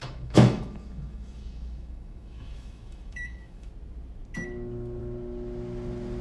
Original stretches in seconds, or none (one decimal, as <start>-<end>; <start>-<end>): 3.7-6.2